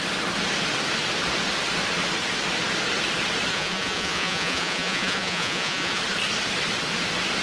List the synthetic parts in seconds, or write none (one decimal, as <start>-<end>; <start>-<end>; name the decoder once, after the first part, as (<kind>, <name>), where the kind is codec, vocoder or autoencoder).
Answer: 3.5-6.0 (vocoder, Vocos)